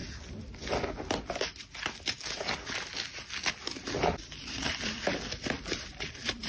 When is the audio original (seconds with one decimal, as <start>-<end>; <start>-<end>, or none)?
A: 0.0-3.9